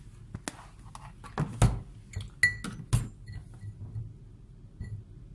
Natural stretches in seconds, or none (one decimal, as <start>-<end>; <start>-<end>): 0.0-3.4; 4.0-5.3